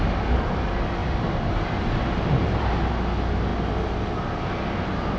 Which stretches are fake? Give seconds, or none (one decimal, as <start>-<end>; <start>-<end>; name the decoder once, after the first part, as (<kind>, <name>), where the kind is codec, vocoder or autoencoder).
1.0-2.9 (vocoder, BigVGAN v2)